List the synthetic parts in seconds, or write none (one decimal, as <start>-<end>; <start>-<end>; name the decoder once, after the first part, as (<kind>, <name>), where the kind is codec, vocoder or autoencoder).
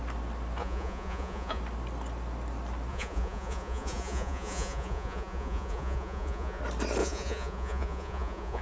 0.6-1.6 (vocoder, Vocos); 2.9-6.6; 7.0-8.6